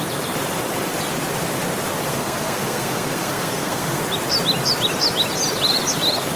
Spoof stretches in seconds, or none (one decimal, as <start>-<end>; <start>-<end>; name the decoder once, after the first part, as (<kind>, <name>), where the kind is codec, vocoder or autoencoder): 2.1-4.0 (codec, SNAC)